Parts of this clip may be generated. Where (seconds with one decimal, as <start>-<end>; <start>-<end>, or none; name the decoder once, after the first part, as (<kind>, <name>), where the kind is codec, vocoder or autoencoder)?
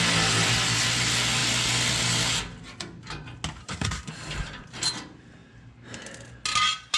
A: 3.6-4.1 (codec, SNAC)